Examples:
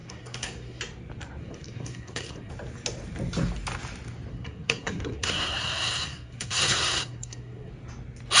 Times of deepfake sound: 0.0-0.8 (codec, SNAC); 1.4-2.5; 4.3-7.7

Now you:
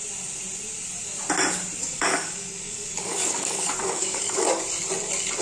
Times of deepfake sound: 1.8-4.6 (codec, DAC)

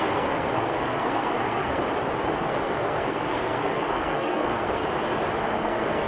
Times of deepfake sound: 0.0-1.8 (codec, SNAC); 2.4-4.8; 5.4-6.1

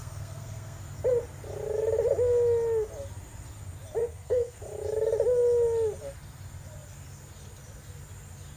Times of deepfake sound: 0.0-0.8 (codec, SNAC); 4.0-4.6